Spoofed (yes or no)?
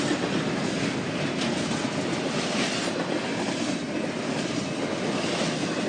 no